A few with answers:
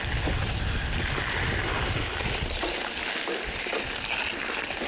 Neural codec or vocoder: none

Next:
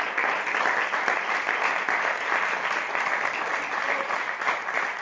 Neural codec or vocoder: none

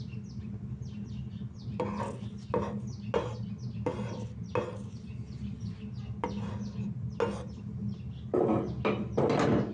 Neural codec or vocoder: none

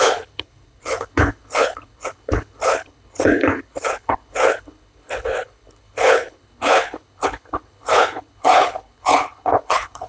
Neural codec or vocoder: codec, HILCodec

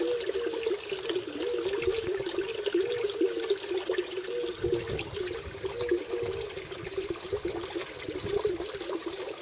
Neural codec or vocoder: none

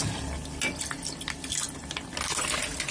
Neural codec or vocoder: none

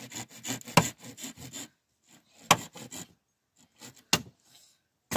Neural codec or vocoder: none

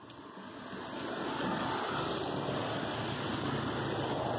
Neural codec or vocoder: none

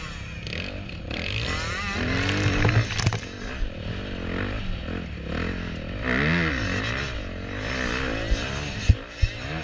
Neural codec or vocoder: none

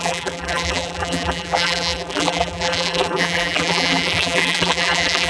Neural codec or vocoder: vocoder, BigVGAN v2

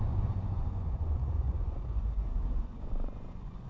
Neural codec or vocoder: vocoder, Vocos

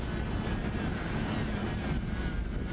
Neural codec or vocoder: none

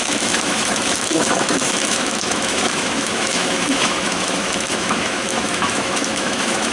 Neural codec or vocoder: autoencoder, DAC-VAE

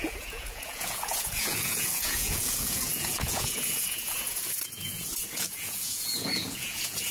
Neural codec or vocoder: vocoder, Vocos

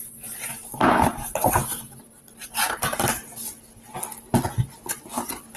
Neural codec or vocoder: none